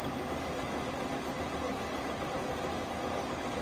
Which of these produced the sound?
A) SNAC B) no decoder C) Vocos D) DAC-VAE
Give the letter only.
B